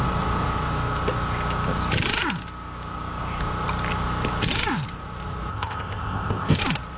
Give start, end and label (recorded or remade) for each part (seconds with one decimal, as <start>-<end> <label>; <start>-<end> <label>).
0.0-5.5 recorded; 5.5-6.6 remade; 6.6-7.0 recorded